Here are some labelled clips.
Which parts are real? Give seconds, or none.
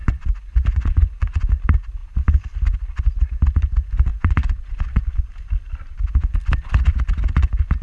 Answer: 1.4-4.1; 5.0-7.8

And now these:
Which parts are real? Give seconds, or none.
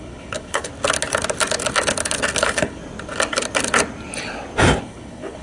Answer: 0.7-2.4; 2.8-4.8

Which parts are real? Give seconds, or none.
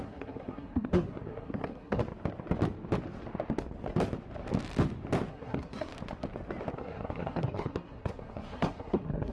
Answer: 2.0-5.3; 5.9-6.7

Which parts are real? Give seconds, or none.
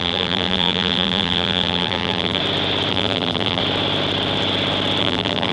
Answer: 2.4-2.9; 3.6-5.0